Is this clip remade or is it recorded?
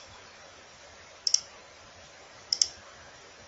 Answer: recorded